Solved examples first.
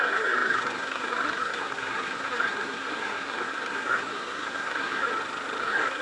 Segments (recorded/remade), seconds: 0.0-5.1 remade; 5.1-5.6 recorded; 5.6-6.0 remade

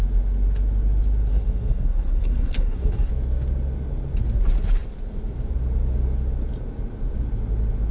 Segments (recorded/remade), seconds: 0.0-1.3 recorded; 1.3-3.1 remade; 3.1-7.9 recorded

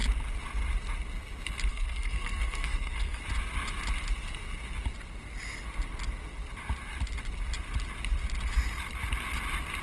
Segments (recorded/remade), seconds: 0.0-1.7 recorded; 1.7-3.2 remade; 3.2-9.8 recorded

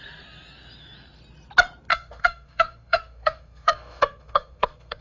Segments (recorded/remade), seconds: 0.0-1.9 recorded; 1.9-5.0 remade

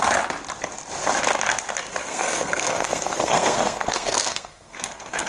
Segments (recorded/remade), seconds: 0.0-2.0 recorded; 2.0-5.3 remade

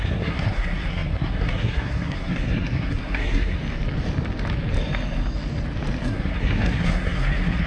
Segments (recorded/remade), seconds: 0.0-3.6 remade; 3.6-6.0 recorded; 6.0-7.7 remade

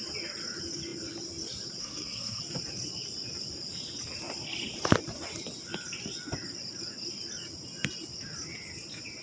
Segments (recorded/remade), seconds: 0.0-1.8 recorded; 1.8-2.4 remade; 2.4-9.2 recorded